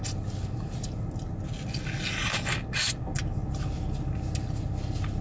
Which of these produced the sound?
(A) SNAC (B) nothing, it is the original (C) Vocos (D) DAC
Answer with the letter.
B